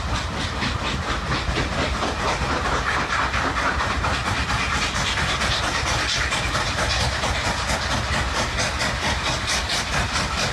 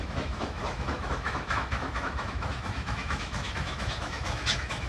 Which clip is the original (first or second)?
first